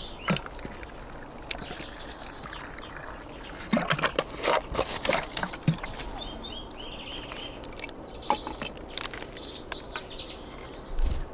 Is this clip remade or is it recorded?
recorded